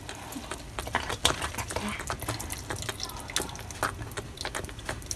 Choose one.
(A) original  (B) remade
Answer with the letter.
A